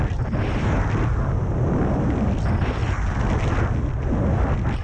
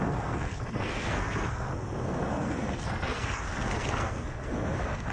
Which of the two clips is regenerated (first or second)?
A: second